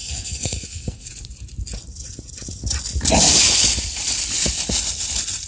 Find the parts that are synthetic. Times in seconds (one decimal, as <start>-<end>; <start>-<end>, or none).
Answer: 0.0-1.1

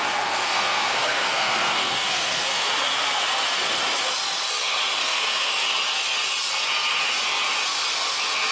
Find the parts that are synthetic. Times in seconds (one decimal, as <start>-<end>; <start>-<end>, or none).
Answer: 0.0-2.7; 5.0-5.5

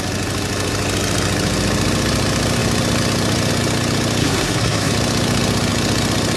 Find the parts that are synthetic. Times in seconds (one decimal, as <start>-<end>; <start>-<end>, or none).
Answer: 4.2-4.9

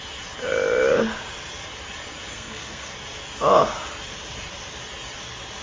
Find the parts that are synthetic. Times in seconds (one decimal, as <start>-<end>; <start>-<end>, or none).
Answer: 2.3-2.9

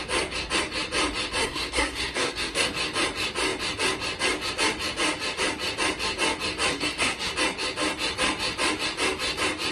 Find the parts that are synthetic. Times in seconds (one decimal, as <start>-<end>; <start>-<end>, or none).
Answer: 1.4-2.7; 6.7-7.3

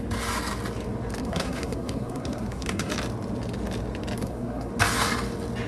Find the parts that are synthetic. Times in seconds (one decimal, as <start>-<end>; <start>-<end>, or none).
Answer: 1.2-2.9; 4.2-4.7

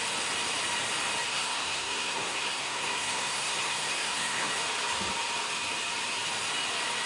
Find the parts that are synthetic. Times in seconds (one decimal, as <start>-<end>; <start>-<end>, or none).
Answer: 1.3-4.5

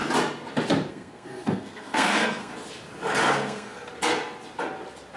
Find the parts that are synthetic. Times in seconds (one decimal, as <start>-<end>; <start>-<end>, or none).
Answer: 0.9-2.5; 3.3-3.9